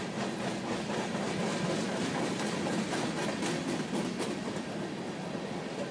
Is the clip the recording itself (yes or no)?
yes